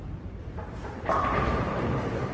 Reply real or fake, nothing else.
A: fake